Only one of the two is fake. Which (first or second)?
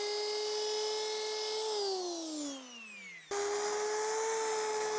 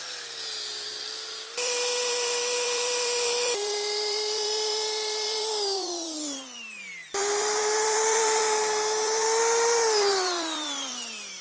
second